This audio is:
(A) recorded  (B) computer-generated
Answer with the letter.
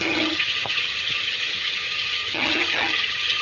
B